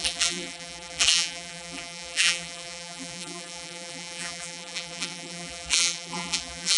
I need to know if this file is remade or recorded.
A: remade